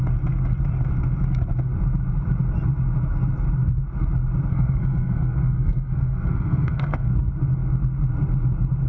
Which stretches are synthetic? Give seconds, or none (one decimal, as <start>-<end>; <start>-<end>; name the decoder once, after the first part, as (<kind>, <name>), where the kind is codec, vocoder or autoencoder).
4.5-7.1 (codec, SNAC)

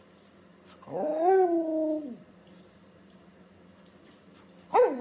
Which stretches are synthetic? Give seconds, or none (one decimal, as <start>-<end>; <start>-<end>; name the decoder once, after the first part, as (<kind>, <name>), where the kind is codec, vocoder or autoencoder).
none

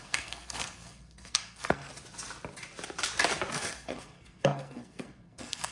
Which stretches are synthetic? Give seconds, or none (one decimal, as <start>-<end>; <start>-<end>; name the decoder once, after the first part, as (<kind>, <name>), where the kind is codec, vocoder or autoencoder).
0.0-1.9 (codec, SNAC); 3.5-5.7